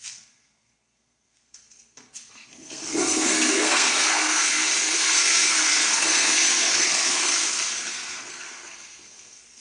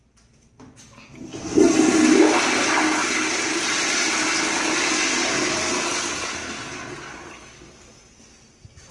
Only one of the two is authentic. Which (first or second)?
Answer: second